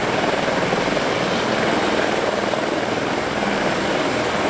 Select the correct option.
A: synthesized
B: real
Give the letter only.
B